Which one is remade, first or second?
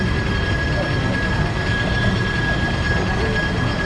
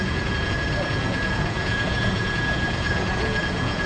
second